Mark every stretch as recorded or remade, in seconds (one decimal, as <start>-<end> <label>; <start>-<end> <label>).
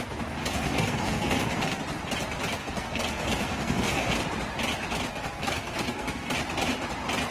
0.0-0.4 recorded; 0.4-1.8 remade; 1.8-2.6 recorded; 2.6-4.2 remade; 4.2-5.1 recorded; 5.1-6.3 remade; 6.3-7.3 recorded